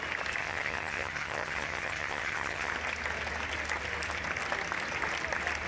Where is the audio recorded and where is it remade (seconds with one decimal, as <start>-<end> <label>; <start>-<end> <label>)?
0.0-0.4 recorded; 0.4-2.7 remade; 2.7-5.7 recorded